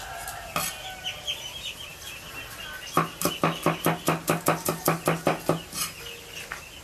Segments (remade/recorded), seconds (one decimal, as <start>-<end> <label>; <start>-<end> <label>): 0.0-6.8 recorded